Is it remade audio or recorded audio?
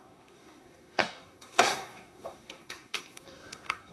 remade